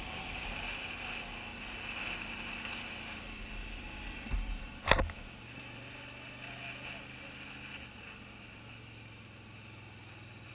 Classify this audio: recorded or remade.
recorded